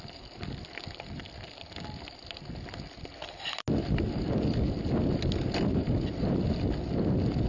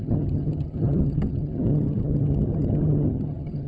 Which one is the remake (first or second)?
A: second